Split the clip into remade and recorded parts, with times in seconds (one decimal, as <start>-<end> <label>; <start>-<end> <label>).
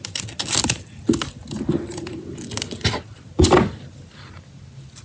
0.0-5.0 recorded